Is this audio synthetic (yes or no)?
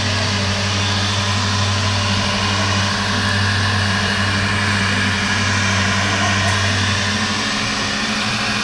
no